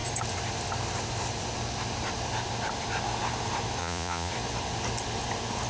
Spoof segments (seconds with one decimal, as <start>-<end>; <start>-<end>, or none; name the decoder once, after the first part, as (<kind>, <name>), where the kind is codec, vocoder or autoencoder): 3.8-4.3 (vocoder, Vocos)

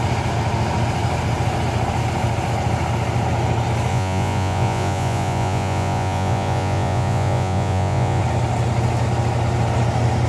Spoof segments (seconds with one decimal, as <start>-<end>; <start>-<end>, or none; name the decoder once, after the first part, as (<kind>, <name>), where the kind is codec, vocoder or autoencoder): 3.9-8.2 (vocoder, Vocos)

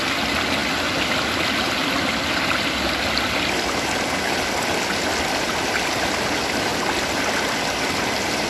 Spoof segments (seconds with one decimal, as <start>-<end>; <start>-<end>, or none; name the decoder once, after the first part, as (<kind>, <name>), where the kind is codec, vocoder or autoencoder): none

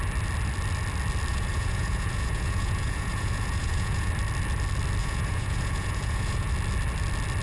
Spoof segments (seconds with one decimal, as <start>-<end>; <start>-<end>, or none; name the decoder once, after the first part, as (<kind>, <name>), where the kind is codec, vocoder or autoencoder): 1.3-4.1 (vocoder, Vocos); 5.0-6.5